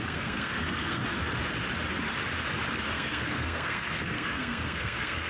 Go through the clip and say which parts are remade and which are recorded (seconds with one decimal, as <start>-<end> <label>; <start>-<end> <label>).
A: 0.0-1.0 remade; 1.0-2.9 recorded; 2.9-5.3 remade